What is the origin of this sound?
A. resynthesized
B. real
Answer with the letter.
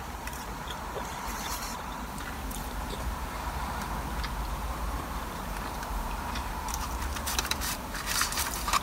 A